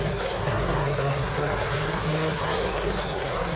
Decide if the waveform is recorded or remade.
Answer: remade